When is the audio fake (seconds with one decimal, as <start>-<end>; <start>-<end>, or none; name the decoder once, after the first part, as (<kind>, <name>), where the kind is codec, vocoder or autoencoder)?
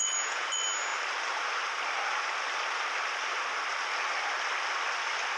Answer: 0.0-0.5 (vocoder, Vocos)